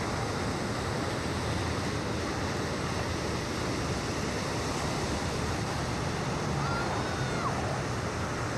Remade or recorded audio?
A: recorded